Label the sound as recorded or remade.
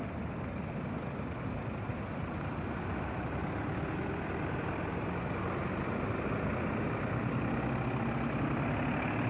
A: recorded